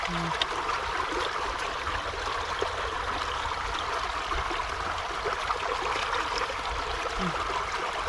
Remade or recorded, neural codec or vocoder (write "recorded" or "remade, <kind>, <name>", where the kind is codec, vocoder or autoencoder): recorded